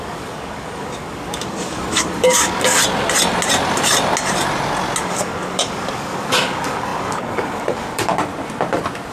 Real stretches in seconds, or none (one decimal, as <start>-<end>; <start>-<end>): 2.8-5.0; 8.1-9.1

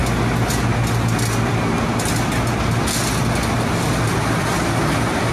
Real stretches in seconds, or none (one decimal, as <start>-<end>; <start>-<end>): 0.0-5.3

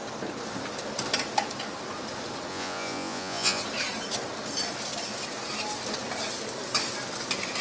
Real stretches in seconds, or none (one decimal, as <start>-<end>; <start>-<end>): 0.0-2.5; 3.6-7.6

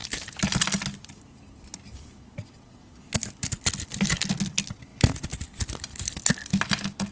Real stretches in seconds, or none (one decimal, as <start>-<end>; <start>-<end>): 0.0-7.1